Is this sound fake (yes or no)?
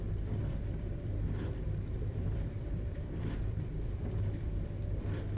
yes